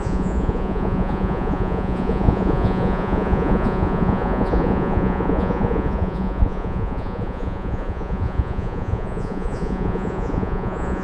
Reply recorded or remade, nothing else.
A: remade